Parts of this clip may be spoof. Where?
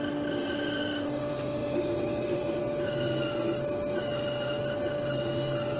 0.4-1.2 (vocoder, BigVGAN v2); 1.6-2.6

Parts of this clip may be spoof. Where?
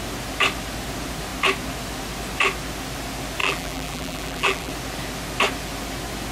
3.4-4.7 (vocoder, BigVGAN v2)